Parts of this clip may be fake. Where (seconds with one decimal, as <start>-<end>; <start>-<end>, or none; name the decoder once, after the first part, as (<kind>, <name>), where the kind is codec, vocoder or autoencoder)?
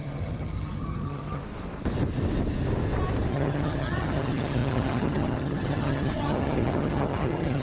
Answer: 0.0-1.4 (vocoder, HiFi-GAN); 3.3-7.6